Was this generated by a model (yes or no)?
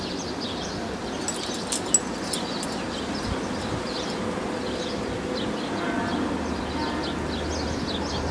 no